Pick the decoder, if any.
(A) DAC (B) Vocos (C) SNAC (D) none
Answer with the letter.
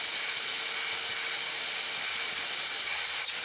D